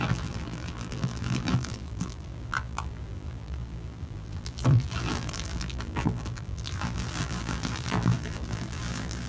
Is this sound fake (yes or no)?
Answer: yes